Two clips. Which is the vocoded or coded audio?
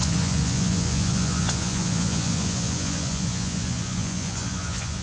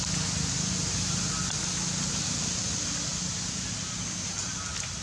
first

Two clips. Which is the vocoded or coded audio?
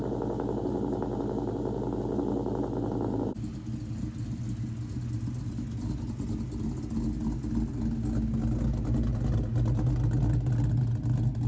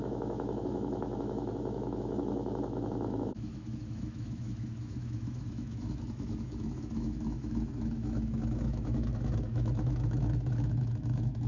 second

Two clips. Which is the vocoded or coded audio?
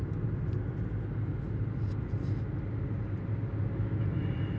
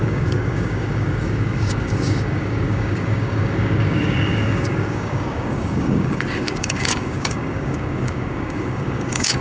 second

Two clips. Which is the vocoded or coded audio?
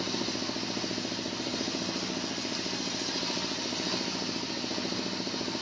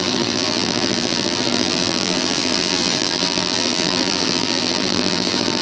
second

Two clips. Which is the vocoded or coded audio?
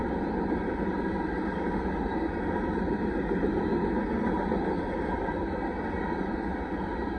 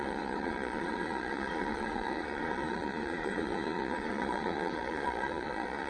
second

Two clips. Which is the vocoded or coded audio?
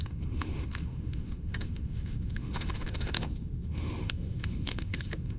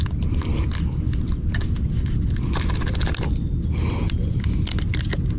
first